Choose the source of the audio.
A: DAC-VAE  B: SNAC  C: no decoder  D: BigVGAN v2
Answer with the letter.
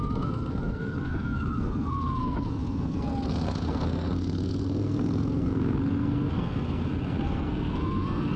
B